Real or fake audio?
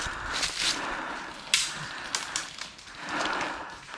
real